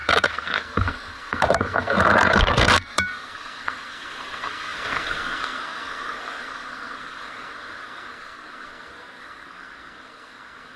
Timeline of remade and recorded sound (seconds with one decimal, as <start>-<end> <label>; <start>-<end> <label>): 0.0-10.8 remade